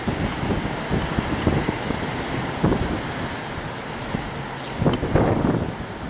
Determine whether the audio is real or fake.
real